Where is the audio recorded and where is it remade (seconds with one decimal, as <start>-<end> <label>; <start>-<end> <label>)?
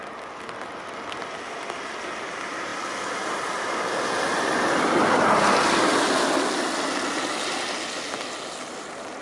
0.0-9.2 recorded